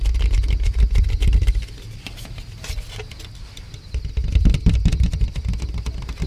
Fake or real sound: real